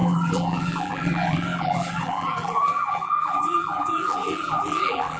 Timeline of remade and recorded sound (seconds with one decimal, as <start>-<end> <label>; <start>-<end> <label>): 0.0-5.2 remade